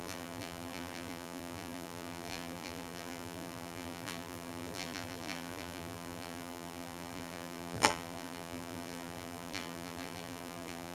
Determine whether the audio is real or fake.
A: fake